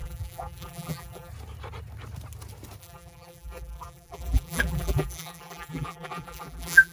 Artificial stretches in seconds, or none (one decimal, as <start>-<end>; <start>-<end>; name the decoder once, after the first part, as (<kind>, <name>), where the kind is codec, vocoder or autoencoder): 0.0-1.3 (vocoder, BigVGAN v2); 2.8-6.9